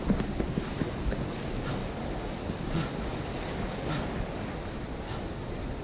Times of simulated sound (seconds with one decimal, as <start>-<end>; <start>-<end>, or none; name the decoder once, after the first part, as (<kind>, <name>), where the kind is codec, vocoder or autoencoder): none